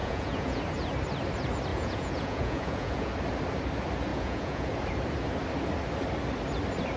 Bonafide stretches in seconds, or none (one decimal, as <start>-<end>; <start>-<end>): 0.6-1.7; 3.1-4.1; 4.7-7.0